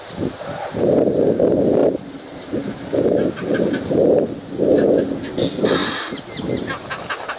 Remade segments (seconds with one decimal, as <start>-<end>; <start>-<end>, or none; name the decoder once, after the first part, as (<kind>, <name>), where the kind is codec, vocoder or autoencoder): 1.8-4.2 (vocoder, BigVGAN v2)